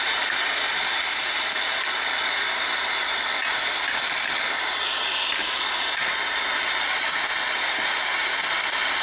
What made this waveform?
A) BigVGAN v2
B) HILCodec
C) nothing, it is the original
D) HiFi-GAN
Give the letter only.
C